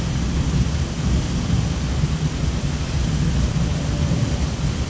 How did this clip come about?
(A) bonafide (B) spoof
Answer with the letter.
A